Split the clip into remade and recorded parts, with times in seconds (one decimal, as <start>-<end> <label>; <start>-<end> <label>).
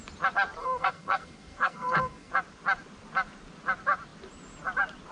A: 0.0-0.6 recorded; 0.6-2.3 remade; 2.3-5.1 recorded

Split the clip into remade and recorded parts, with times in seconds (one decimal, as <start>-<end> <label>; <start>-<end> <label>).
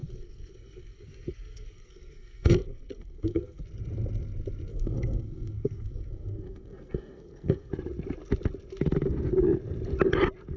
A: 0.0-3.6 remade; 3.6-4.7 recorded; 4.7-7.7 remade; 7.7-10.6 recorded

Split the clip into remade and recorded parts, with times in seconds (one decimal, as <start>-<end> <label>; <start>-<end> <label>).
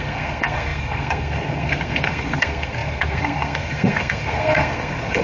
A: 0.0-5.2 remade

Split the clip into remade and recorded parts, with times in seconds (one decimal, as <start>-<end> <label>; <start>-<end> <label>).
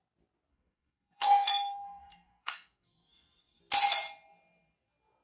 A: 0.0-0.5 recorded; 0.5-3.6 remade; 3.6-5.2 recorded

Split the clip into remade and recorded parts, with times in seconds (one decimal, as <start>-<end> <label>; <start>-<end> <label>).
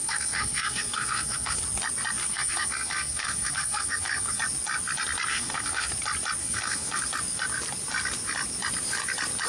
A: 0.0-1.6 remade; 1.6-2.2 recorded; 2.2-4.4 remade; 4.4-5.3 recorded; 5.3-5.9 remade; 5.9-6.4 recorded; 6.4-7.0 remade; 7.0-9.5 recorded